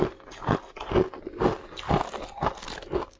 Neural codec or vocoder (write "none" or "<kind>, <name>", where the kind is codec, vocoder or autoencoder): none